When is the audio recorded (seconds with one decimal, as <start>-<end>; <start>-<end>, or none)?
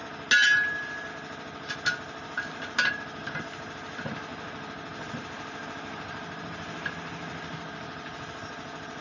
0.0-9.0